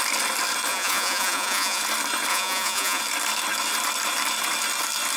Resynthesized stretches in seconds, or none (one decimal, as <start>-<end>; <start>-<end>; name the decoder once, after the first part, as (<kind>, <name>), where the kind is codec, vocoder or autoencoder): 0.7-1.8 (vocoder, Vocos); 2.3-3.0